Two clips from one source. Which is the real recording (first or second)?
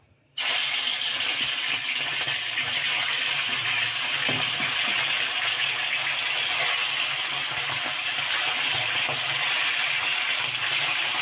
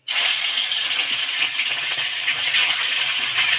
first